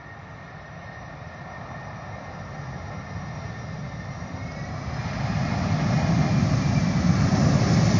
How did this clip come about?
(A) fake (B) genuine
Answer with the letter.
B